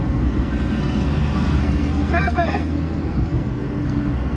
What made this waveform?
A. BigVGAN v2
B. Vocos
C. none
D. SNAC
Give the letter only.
D